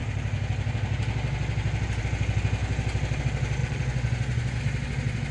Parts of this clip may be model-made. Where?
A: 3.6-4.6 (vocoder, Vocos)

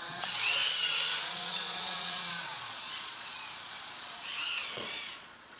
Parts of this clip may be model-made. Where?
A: 0.0-0.6 (vocoder, Vocos); 1.2-5.6

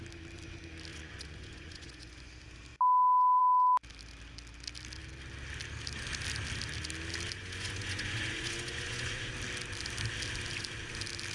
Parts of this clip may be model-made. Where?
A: 0.9-2.3 (vocoder, Vocos); 7.4-9.3

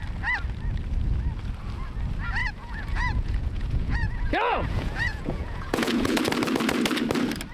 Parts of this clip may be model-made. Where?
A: 2.4-6.2 (vocoder, Vocos)

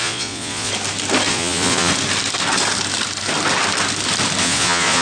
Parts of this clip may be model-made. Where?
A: 0.0-0.7 (vocoder, Vocos); 1.3-1.9; 4.4-5.0